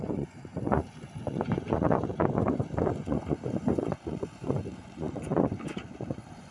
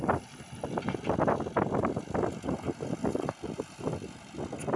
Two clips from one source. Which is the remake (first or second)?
first